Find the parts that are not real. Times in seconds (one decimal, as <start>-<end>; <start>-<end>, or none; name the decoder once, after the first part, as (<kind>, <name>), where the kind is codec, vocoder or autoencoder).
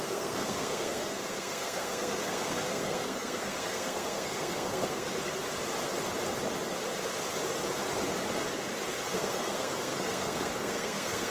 0.0-5.1 (codec, SNAC); 9.1-11.3